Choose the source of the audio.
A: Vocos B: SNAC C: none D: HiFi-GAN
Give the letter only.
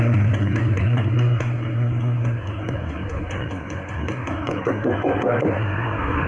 B